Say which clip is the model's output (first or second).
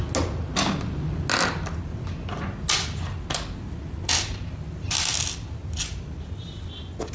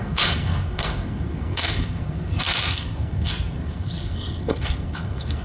second